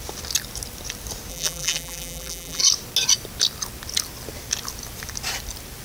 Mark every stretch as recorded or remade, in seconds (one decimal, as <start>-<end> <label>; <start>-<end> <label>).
0.0-1.3 recorded; 1.3-2.6 remade; 2.6-5.8 recorded